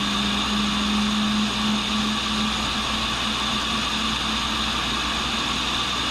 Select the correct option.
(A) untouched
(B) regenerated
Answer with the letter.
A